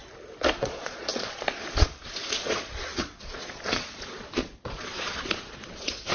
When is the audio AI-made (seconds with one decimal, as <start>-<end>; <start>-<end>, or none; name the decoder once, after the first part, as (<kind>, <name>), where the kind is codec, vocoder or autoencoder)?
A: 0.6-6.1 (vocoder, Vocos)